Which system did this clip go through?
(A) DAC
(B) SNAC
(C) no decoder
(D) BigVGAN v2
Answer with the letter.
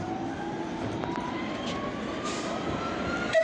C